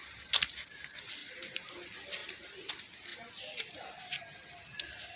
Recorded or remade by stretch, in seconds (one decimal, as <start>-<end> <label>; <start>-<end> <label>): 0.0-1.2 recorded; 1.2-1.7 remade; 1.7-2.2 recorded; 2.2-2.7 remade; 2.7-3.1 recorded; 3.1-4.2 remade; 4.2-5.2 recorded